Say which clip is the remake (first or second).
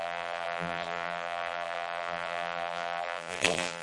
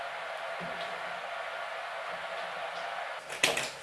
first